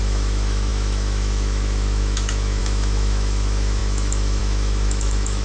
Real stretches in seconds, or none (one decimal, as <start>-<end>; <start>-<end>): none